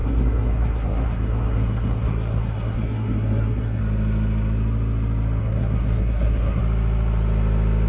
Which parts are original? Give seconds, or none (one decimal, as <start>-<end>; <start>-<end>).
3.8-5.4; 6.6-7.9